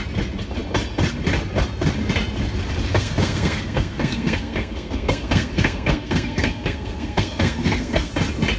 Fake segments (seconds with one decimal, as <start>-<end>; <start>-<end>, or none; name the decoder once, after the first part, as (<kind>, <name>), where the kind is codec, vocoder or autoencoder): 2.9-8.1 (codec, SNAC)

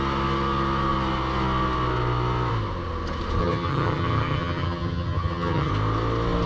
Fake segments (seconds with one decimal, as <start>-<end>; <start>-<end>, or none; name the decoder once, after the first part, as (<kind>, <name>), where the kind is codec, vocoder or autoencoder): 3.4-5.7 (vocoder, HiFi-GAN)

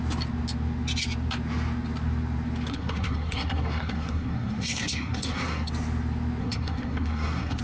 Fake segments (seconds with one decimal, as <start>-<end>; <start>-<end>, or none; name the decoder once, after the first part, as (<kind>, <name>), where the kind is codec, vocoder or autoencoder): 2.7-5.7 (codec, SNAC); 6.4-7.6

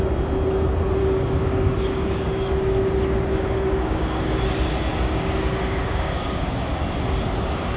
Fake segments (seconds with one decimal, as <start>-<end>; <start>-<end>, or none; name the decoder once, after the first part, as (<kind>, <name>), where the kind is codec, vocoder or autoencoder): 1.0-4.5 (codec, DAC); 4.9-6.7

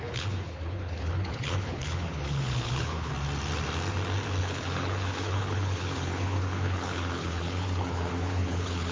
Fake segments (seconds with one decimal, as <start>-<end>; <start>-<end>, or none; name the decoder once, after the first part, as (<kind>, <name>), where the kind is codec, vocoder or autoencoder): 0.0-3.1 (codec, HILCodec); 4.4-8.9

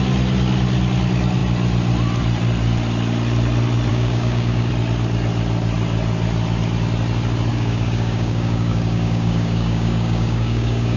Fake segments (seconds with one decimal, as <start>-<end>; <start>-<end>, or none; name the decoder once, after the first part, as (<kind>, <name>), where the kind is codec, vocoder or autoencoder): 3.9-4.7 (codec, DAC); 7.5-11.0

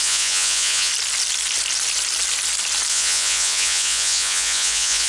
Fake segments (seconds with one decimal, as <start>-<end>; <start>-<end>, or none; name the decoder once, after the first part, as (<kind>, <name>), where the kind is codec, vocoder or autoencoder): 0.0-0.9 (vocoder, Vocos); 2.9-5.1